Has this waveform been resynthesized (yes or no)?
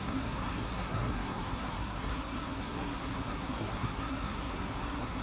yes